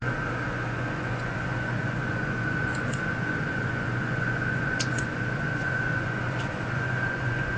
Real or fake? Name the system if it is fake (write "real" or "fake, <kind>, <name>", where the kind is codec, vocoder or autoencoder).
fake, vocoder, Vocos